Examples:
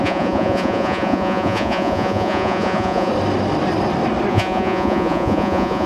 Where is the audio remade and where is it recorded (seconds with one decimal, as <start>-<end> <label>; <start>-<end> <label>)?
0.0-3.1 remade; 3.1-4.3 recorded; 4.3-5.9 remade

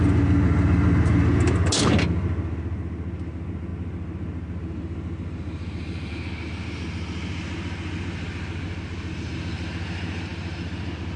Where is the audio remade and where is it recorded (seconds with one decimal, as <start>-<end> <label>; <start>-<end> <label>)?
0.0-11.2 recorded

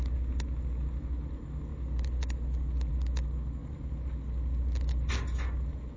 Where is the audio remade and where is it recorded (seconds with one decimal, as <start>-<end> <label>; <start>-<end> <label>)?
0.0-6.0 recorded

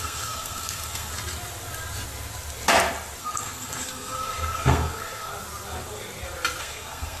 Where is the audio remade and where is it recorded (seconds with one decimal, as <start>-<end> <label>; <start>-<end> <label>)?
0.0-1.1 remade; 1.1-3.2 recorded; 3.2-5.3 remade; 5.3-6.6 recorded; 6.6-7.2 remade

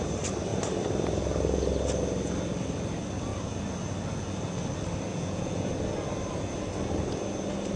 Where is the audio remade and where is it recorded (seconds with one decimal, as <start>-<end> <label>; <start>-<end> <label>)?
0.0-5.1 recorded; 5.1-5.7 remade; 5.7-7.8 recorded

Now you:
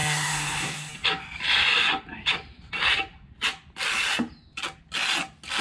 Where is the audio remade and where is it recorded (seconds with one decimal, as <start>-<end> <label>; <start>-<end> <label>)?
0.0-0.9 remade; 0.9-5.6 recorded

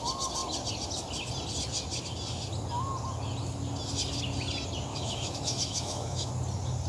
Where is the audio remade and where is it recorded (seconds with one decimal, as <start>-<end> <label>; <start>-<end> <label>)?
0.0-4.9 recorded; 4.9-6.3 remade; 6.3-6.9 recorded